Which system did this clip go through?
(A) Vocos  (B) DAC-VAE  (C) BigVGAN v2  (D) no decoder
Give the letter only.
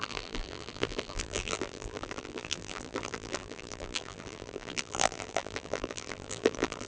C